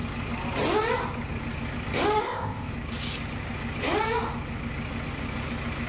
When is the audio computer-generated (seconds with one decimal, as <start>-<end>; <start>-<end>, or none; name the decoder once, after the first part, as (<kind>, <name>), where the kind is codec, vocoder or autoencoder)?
2.2-2.7 (codec, ZipCodec)